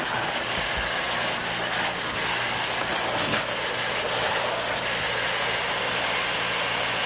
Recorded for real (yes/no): yes